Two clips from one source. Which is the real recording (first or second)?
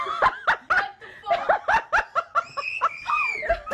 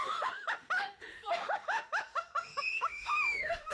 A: first